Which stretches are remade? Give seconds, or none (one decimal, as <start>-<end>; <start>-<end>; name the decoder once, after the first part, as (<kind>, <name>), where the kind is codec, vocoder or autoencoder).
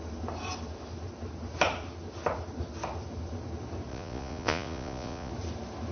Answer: 3.9-5.3 (vocoder, Vocos)